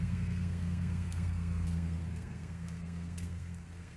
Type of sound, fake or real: fake